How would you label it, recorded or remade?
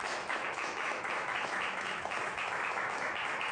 remade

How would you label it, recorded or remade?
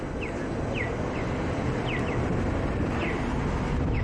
recorded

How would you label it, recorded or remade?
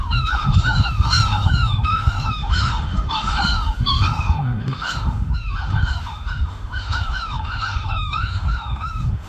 remade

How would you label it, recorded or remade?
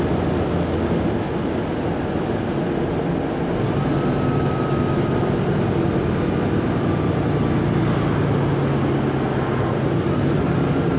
recorded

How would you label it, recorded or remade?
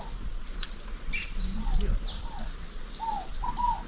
recorded